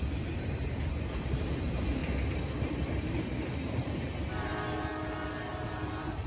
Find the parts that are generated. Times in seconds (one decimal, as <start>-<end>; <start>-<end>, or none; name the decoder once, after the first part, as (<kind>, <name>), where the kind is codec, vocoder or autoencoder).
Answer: 0.0-2.0 (vocoder, BigVGAN v2); 3.1-6.3